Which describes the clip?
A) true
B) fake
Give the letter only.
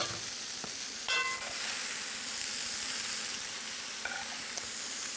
A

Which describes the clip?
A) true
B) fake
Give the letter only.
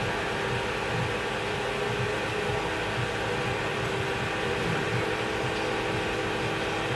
A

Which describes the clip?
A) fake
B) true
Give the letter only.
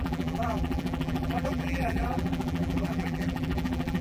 A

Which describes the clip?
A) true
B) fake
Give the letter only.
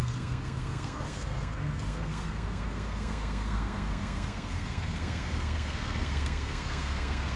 B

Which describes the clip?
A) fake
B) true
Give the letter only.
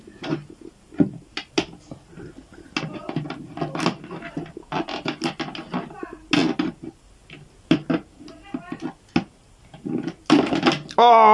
B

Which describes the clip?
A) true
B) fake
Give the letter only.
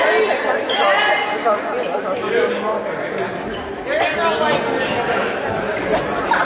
A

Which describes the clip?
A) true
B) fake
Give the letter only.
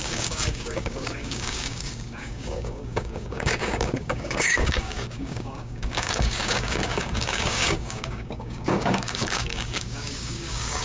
B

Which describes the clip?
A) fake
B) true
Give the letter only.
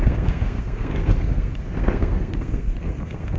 A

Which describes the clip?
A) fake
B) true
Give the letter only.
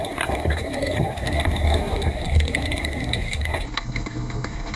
A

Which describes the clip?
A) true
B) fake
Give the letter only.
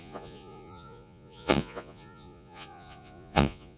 B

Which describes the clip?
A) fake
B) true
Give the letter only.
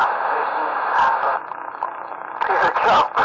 B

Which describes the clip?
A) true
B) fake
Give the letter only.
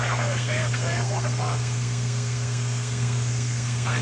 B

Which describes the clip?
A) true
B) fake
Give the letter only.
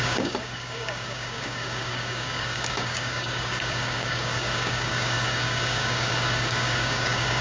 B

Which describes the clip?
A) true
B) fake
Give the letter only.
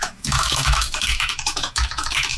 B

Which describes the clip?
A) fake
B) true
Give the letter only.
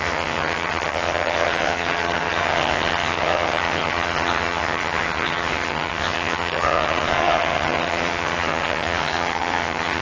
A